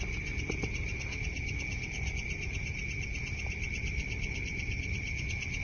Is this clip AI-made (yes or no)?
no